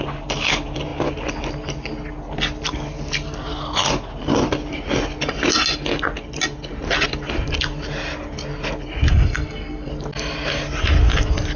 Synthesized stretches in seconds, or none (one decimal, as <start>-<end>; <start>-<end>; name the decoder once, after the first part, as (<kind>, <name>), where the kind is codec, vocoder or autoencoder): 9.1-9.9 (codec, SNAC)